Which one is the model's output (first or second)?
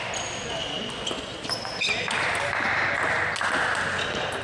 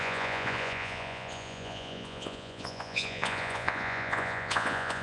second